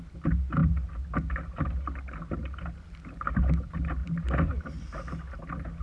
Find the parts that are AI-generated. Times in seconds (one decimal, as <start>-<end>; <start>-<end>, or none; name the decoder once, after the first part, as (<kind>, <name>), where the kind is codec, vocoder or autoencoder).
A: none